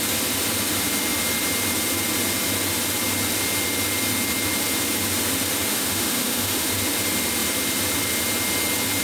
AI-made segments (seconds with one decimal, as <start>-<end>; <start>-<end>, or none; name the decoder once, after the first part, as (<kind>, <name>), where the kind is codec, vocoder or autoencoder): 5.7-6.7 (autoencoder, DAC-VAE)